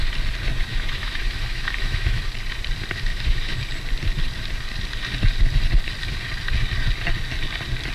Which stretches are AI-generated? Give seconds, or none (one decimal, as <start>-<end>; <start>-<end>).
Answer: 0.7-2.2; 3.1-3.6